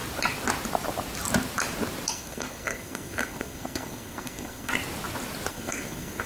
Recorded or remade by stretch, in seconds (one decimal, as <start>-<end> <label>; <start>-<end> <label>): 0.0-2.1 recorded; 2.1-4.7 remade; 4.7-5.5 recorded; 5.5-6.3 remade